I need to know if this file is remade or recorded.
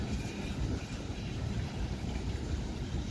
remade